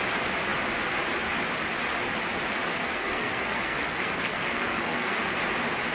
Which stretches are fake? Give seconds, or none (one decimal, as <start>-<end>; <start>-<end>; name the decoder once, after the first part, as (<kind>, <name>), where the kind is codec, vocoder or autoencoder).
2.8-5.4 (codec, SNAC)